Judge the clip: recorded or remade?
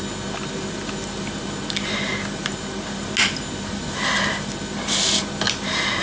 recorded